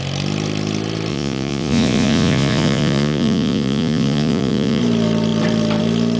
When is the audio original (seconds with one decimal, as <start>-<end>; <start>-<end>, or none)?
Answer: 0.0-1.1; 4.8-6.2